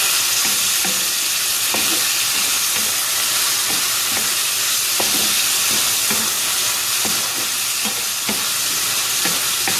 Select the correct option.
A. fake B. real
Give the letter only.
B